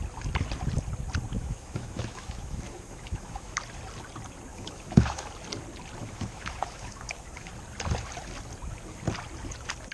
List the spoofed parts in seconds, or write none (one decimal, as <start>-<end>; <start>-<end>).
1.4-3.6; 4.5-5.3; 6.0-7.5